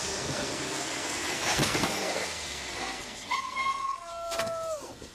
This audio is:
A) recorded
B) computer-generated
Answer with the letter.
B